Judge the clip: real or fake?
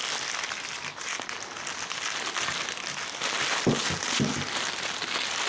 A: real